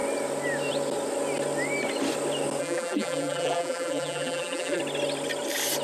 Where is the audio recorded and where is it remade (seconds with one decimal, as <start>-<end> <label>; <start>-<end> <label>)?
0.0-2.6 recorded; 2.6-4.8 remade; 4.8-5.8 recorded